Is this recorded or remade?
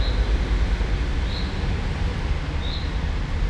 recorded